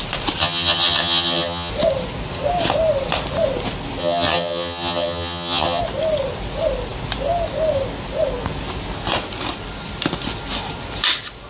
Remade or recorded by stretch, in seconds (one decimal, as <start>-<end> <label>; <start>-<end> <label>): 0.0-0.4 recorded; 0.4-1.7 remade; 1.7-4.0 recorded; 4.0-5.8 remade; 5.8-11.5 recorded